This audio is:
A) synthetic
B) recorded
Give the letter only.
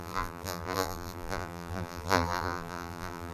A